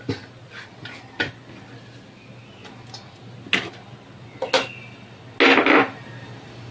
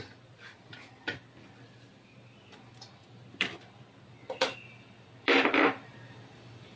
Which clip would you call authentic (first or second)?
first